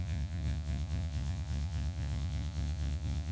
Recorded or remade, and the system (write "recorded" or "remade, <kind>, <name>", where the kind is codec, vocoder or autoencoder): remade, vocoder, Vocos